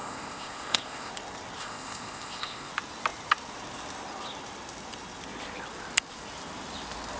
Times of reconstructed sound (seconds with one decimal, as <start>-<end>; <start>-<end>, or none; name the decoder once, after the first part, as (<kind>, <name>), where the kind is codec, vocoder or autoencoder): 0.0-1.1 (codec, ZipCodec); 1.6-2.7